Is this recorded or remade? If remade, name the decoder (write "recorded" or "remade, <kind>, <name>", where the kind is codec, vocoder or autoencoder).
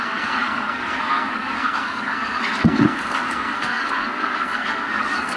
remade, codec, SNAC